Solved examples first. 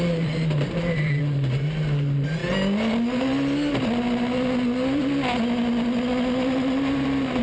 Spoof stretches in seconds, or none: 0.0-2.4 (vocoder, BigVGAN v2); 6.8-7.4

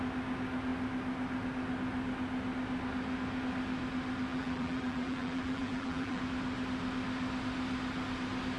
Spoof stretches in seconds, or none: 4.3-6.2 (vocoder, BigVGAN v2)